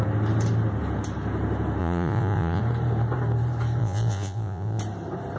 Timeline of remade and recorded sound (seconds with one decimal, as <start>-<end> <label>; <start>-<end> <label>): 0.0-1.8 recorded; 1.8-2.6 remade; 2.6-3.8 recorded; 3.8-4.8 remade; 4.8-5.4 recorded